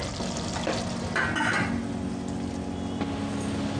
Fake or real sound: real